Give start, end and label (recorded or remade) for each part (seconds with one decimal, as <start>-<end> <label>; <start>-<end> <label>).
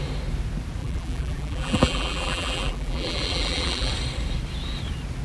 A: 0.0-0.8 recorded; 0.8-3.9 remade; 3.9-5.2 recorded